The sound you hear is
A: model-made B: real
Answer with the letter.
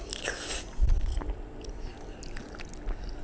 B